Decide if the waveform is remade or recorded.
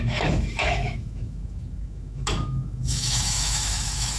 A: remade